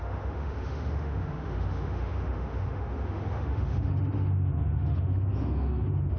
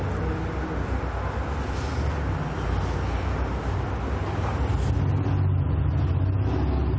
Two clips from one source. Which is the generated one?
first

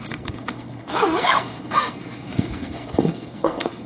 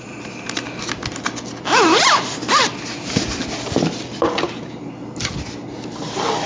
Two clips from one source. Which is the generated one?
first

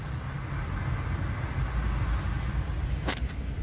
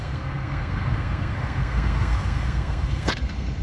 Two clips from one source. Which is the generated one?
second